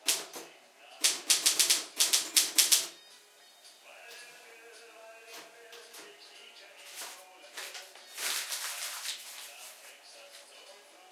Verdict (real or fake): real